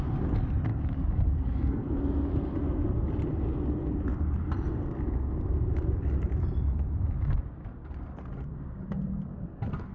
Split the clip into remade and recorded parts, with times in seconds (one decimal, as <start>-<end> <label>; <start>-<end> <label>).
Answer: 0.0-0.7 recorded; 0.7-1.9 remade; 1.9-9.9 recorded